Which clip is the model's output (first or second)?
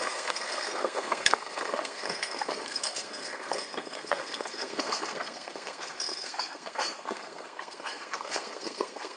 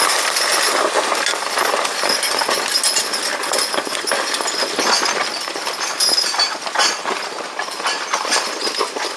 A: first